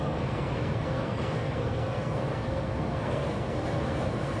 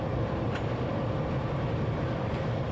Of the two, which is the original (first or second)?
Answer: second